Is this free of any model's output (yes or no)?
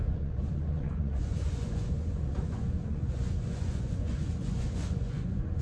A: no